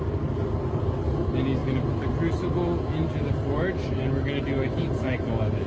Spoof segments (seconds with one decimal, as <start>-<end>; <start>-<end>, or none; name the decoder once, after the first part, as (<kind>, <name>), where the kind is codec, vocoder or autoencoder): none